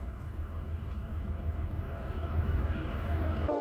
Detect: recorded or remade remade